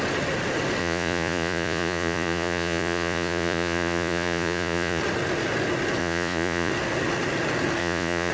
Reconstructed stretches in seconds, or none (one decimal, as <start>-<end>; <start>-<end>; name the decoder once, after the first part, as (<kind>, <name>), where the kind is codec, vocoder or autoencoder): 0.8-5.0 (vocoder, Vocos); 6.0-6.7; 7.8-8.3